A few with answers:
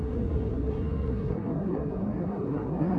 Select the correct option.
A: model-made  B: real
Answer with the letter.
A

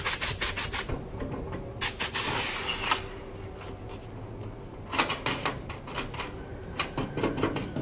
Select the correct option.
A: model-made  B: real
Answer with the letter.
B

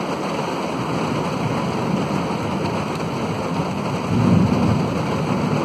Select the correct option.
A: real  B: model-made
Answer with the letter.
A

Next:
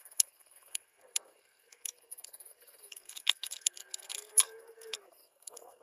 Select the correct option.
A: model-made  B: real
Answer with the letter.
A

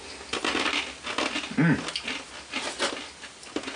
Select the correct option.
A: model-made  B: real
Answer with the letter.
B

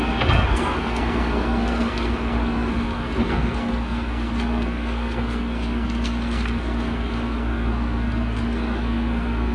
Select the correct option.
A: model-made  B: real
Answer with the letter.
A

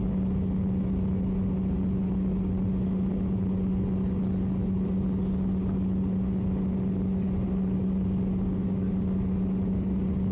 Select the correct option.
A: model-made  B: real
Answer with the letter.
B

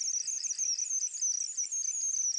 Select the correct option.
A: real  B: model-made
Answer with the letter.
A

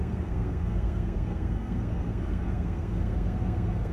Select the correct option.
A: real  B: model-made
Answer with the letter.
B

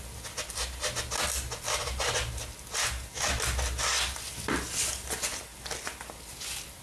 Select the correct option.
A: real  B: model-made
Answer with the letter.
A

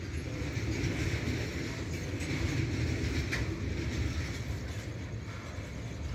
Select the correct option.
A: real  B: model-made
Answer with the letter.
A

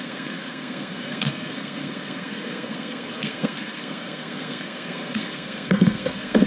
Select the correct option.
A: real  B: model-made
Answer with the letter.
B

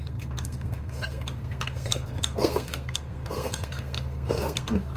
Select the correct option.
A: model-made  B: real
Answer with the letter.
A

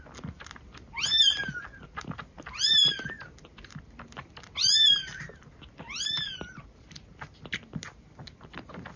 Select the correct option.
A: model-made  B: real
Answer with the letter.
B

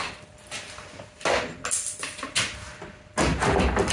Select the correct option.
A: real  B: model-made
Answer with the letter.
A